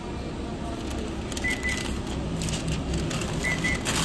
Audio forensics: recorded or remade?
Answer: recorded